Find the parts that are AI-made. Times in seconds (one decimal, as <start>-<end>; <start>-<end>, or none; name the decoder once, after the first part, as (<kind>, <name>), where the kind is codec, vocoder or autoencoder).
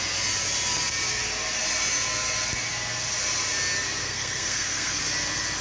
4.0-5.0 (codec, SNAC)